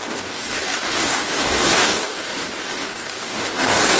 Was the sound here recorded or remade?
remade